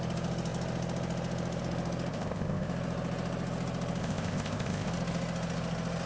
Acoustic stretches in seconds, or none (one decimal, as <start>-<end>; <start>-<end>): 0.0-2.1; 2.7-4.0; 4.9-6.1